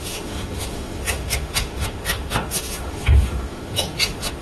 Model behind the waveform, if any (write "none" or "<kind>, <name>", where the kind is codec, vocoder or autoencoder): autoencoder, DAC-VAE